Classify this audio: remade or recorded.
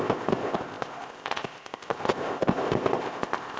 remade